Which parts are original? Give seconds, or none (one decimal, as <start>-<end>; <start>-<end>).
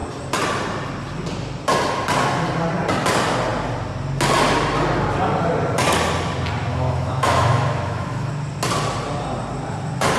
0.0-6.7; 8.3-10.2